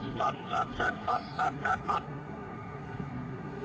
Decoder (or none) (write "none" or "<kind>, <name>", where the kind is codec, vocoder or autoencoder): codec, SNAC